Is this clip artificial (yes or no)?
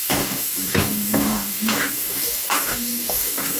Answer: yes